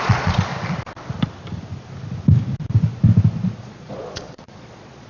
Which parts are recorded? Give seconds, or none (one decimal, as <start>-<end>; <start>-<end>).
0.5-3.6